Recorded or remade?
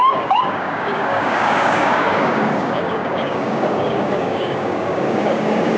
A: remade